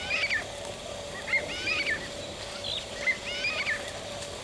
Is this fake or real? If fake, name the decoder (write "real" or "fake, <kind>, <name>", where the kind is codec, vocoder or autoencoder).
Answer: real